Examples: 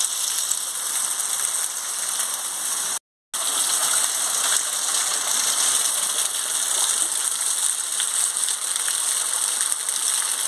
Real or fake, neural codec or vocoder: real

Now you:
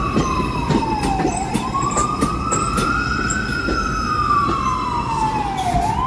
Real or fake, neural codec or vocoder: real